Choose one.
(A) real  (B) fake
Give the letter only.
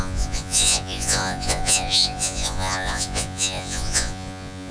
B